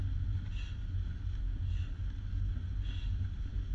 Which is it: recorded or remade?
recorded